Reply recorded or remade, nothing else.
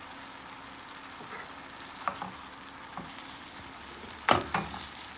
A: recorded